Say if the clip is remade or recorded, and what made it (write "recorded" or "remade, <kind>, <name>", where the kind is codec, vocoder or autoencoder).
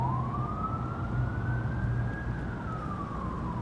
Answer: recorded